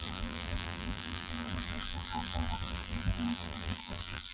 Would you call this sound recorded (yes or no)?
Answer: no